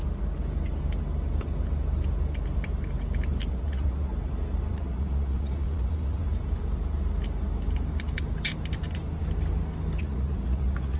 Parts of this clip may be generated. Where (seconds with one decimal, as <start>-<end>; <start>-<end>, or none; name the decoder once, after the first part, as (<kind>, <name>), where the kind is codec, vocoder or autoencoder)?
3.5-4.1 (vocoder, Vocos); 4.7-6.2; 10.0-11.0